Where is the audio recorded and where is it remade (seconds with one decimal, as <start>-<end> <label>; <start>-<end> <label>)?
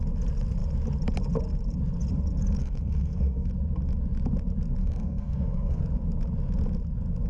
0.0-2.6 recorded; 2.6-3.5 remade; 3.5-4.8 recorded; 4.8-5.8 remade; 5.8-7.3 recorded